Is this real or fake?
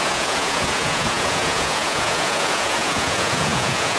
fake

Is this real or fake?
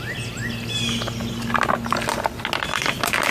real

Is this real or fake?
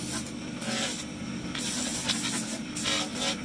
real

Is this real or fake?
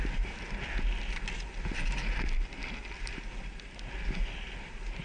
real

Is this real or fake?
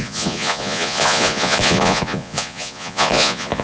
fake